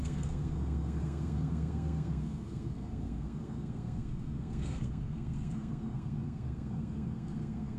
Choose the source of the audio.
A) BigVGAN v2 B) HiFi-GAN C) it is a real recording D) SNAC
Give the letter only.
D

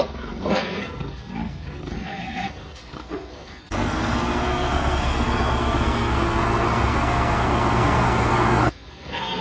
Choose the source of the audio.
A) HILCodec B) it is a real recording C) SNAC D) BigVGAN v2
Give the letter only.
C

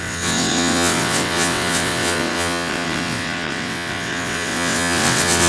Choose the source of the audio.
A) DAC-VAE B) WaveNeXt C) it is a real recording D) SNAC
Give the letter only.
B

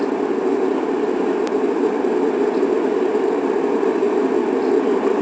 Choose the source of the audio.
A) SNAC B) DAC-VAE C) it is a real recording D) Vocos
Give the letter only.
C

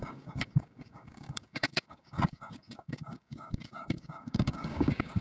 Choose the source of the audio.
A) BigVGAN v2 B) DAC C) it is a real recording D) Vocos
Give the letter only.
B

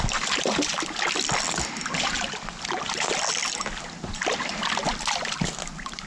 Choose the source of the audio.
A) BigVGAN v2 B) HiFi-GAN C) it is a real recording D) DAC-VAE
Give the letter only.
C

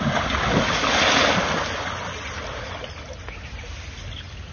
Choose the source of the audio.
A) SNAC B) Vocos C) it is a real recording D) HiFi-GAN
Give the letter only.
C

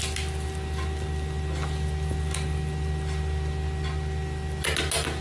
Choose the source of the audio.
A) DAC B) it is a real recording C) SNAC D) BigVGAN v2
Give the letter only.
B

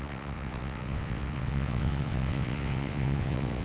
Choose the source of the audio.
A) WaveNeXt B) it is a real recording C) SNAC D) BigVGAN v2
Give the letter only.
A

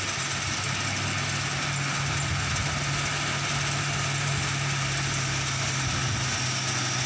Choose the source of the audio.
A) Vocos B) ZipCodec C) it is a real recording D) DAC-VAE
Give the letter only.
C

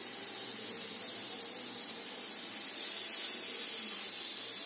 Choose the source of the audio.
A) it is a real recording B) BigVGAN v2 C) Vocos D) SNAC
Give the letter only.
B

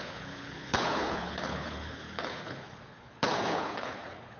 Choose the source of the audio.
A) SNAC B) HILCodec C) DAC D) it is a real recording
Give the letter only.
B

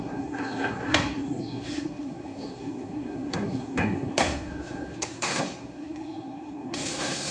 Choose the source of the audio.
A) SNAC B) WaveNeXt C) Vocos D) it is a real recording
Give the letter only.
A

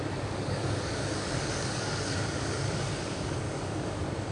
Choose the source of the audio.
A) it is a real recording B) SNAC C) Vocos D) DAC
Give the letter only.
D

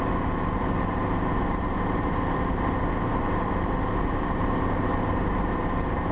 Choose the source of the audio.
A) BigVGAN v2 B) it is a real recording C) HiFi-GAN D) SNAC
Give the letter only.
A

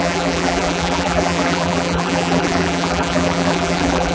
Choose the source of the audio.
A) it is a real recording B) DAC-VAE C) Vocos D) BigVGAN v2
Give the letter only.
D